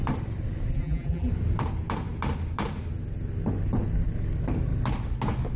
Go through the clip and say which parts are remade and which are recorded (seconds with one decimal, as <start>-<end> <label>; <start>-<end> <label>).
0.0-0.7 recorded; 0.7-1.3 remade; 1.3-5.6 recorded